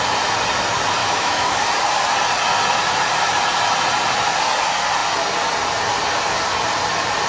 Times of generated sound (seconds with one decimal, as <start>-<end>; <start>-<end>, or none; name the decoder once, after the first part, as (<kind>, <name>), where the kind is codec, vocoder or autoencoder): 1.0-1.6 (autoencoder, DAC-VAE)